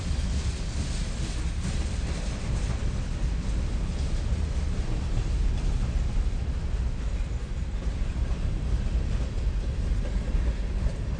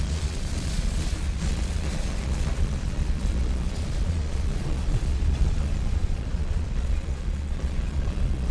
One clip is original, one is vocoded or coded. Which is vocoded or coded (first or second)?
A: second